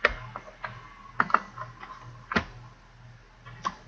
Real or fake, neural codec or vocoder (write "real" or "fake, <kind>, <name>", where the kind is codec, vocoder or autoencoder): real